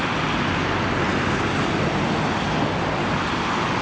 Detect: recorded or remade recorded